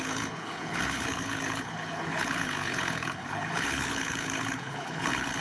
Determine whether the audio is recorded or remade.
remade